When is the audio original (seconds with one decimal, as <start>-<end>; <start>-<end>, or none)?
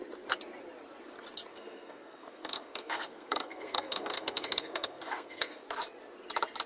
0.0-1.5; 5.5-6.7